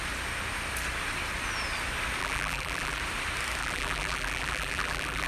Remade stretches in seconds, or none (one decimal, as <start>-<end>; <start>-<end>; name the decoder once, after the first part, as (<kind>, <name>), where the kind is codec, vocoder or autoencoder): 2.2-3.0 (vocoder, BigVGAN v2); 3.6-5.3